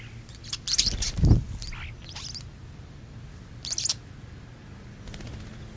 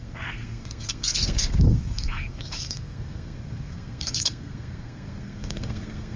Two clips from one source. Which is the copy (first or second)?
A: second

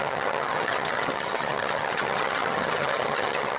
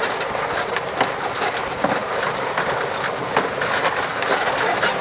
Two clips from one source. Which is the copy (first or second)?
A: first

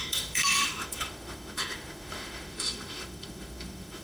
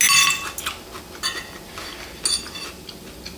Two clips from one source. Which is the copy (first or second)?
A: first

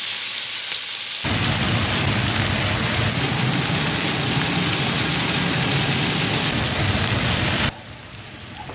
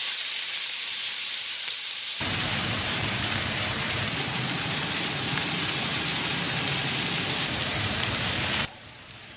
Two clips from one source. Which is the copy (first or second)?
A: second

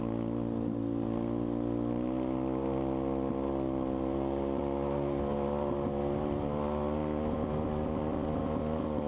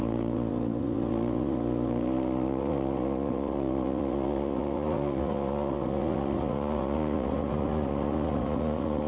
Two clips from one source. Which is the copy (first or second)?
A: second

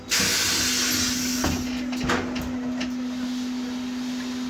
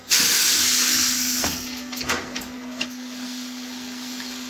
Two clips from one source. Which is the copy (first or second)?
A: second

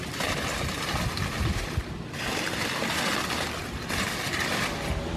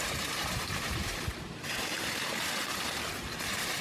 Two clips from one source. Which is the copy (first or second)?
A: second